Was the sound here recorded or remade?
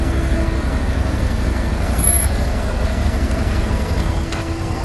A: remade